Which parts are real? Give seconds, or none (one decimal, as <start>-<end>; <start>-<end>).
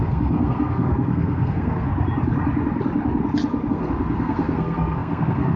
1.9-3.7